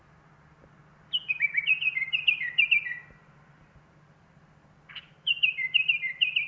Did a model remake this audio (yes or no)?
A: yes